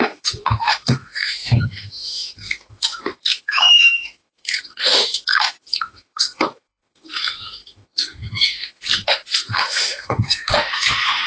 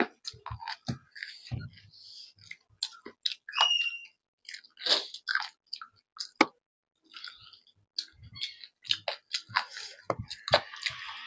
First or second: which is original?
second